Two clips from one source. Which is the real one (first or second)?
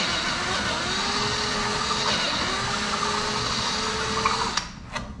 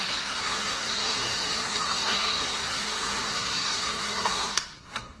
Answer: first